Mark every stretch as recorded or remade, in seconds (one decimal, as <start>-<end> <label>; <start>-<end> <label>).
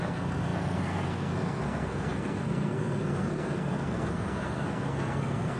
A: 0.0-5.6 remade